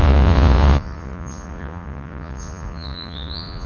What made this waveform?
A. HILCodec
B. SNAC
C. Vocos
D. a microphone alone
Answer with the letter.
C